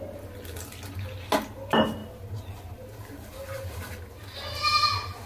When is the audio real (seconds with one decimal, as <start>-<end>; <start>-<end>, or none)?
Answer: 0.0-2.0; 4.1-5.3